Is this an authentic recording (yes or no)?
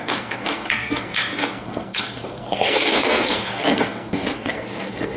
no